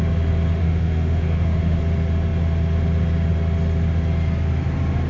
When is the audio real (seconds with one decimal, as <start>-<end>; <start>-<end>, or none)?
0.0-0.6; 1.8-5.1